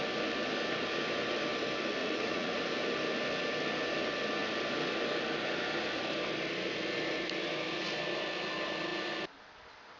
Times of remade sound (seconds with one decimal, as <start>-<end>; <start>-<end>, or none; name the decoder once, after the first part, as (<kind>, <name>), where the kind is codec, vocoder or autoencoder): 2.0-2.6 (vocoder, Vocos)